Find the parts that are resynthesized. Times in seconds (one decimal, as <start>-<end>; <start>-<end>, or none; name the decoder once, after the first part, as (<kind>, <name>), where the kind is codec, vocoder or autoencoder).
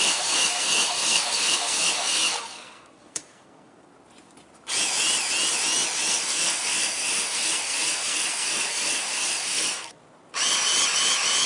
0.0-3.9 (codec, SNAC); 6.1-10.0